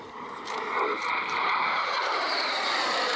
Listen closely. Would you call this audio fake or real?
fake